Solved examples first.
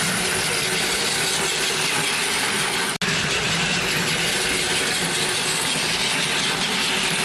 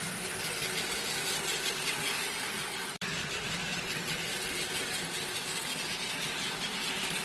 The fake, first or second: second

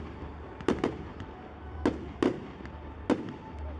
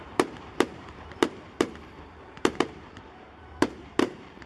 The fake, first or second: second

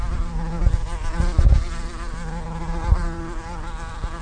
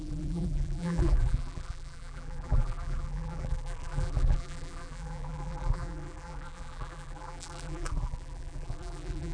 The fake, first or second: second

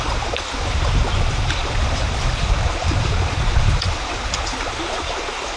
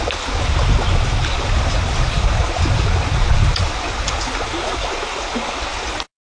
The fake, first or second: first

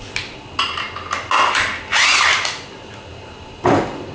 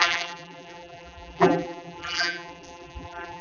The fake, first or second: second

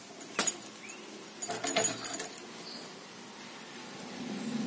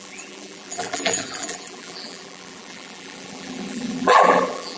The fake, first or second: second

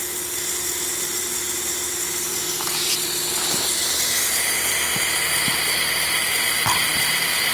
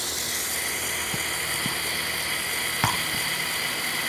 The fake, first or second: second